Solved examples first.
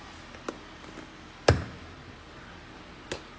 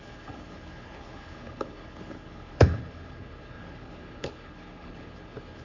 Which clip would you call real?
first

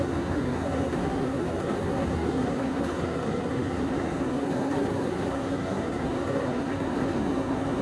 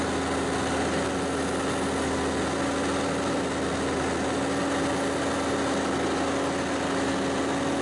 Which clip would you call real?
second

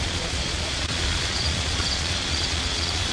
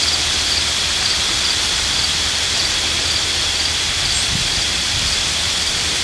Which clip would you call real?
second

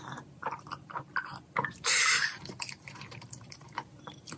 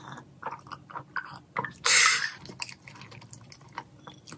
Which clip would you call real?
second